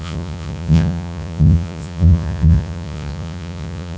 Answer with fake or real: fake